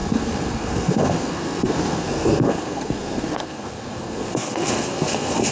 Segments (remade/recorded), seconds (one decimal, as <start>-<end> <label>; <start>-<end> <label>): 0.0-5.5 remade